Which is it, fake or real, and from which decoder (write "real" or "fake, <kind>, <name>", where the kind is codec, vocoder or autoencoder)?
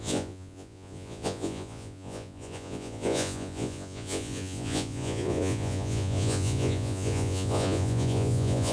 fake, vocoder, Vocos